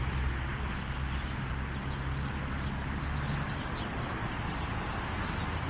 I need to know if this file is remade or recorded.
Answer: recorded